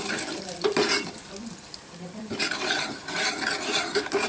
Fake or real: fake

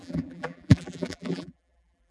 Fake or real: fake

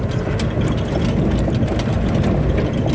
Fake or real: real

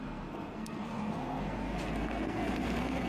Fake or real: fake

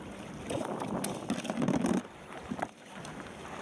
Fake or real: real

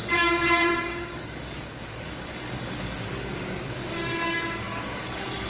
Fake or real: fake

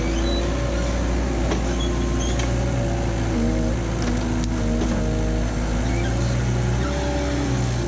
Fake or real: real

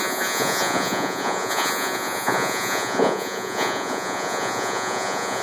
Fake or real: fake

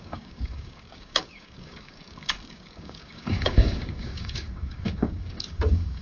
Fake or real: fake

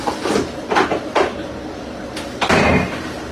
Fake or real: real